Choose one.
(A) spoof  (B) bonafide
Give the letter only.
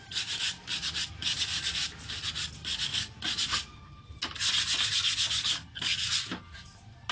B